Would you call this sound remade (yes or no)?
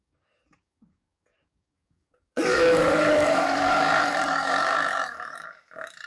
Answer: yes